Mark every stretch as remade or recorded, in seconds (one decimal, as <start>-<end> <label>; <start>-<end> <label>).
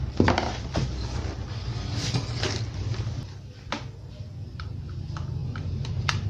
0.0-4.5 recorded; 4.5-5.0 remade; 5.0-5.4 recorded; 5.4-6.3 remade